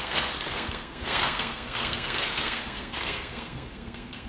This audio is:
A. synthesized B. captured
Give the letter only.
A